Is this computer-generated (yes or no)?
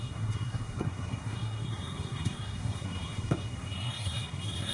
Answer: yes